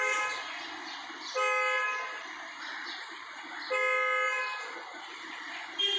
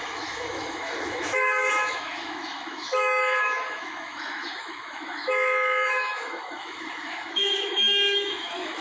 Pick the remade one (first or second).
second